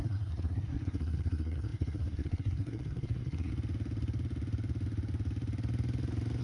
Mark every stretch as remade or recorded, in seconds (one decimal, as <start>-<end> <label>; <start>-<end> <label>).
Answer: 0.0-3.5 remade; 3.5-6.4 recorded